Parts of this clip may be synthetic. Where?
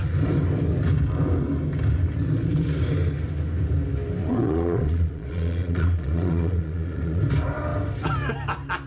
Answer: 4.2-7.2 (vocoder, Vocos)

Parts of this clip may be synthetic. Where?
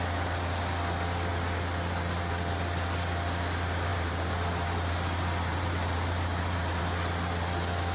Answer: 3.9-6.8 (vocoder, BigVGAN v2)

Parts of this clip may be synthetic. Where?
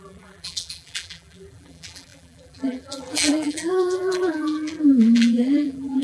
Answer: 0.0-6.0 (vocoder, BigVGAN v2)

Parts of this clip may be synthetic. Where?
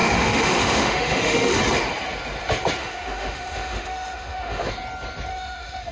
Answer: 0.0-1.6 (autoencoder, DAC-VAE); 2.8-4.7; 5.3-5.9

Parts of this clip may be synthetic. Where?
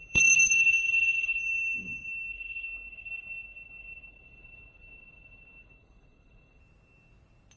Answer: 0.0-1.4 (codec, HILCodec); 2.3-6.6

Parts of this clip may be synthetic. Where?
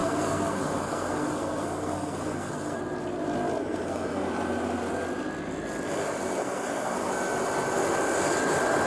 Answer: 0.0-2.8 (codec, SNAC); 3.6-4.3; 6.4-7.1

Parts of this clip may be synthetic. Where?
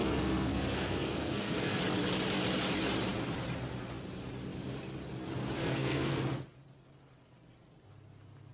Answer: 0.0-1.8 (codec, SNAC); 5.6-6.2